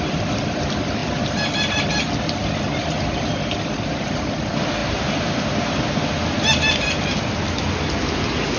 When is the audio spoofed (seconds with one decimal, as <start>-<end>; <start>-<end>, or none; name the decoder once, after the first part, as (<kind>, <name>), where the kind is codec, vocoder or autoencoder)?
4.8-5.4 (vocoder, BigVGAN v2)